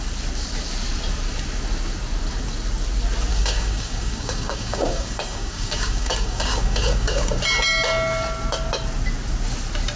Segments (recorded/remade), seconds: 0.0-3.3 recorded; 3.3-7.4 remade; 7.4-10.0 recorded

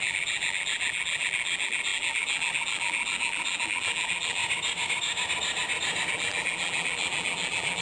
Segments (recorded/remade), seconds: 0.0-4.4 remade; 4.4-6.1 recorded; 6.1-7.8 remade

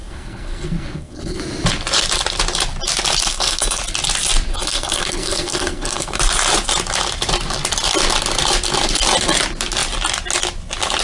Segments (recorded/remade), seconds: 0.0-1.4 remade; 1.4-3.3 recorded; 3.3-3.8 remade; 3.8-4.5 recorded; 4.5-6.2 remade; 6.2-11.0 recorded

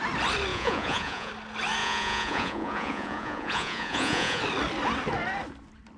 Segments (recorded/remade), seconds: 0.0-0.5 recorded; 0.5-1.3 remade; 1.3-1.8 recorded; 1.8-4.4 remade; 4.4-6.0 recorded

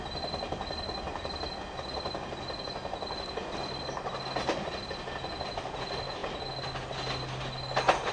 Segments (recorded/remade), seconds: 0.0-8.1 recorded